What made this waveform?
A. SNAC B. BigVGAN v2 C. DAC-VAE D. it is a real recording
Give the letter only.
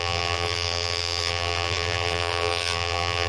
B